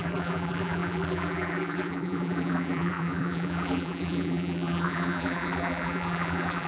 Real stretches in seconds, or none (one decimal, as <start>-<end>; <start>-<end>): none